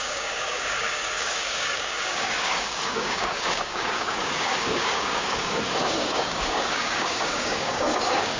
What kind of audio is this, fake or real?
fake